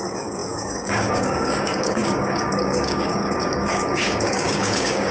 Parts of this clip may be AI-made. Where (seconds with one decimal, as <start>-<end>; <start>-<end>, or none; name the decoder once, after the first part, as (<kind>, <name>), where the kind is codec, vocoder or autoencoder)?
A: 0.0-5.1 (codec, DAC)